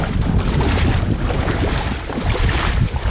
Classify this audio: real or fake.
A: real